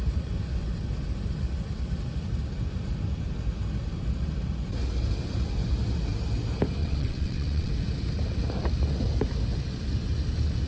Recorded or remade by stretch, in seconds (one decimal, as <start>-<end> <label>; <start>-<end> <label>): 0.0-6.8 recorded; 6.8-7.7 remade; 7.7-10.7 recorded